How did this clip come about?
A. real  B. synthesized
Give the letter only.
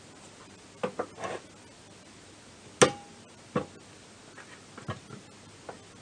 A